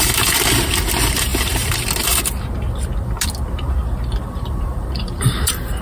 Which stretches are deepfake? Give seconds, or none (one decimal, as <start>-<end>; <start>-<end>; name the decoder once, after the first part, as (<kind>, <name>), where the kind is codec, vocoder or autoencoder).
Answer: 0.0-1.3 (vocoder, BigVGAN v2); 4.3-5.8